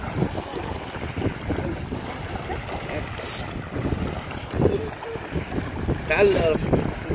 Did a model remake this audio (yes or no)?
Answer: no